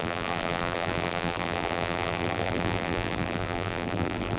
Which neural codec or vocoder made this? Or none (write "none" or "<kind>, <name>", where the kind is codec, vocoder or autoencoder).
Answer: vocoder, BigVGAN v2